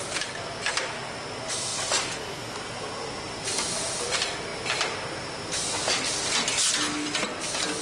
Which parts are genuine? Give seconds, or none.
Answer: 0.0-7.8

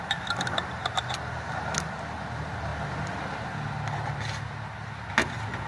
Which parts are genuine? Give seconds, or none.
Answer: 0.0-5.7

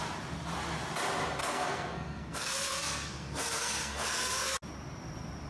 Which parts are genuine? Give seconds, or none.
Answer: 0.0-1.4; 4.6-5.5

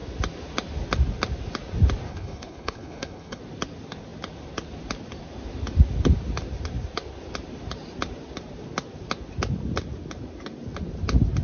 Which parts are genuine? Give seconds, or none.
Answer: 0.0-2.1; 3.4-11.4

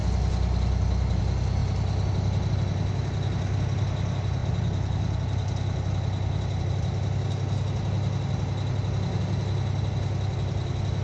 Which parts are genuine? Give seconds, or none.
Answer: 1.2-11.0

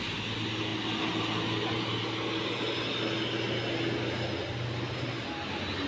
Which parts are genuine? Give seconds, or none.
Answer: 0.0-5.9